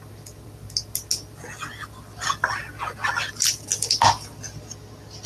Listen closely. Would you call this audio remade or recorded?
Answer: recorded